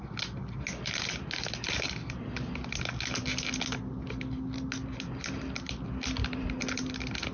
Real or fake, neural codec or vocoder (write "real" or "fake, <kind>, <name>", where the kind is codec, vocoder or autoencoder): real